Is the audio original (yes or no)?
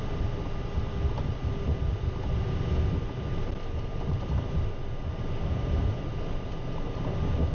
yes